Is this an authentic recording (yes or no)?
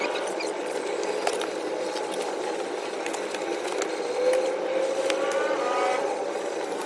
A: yes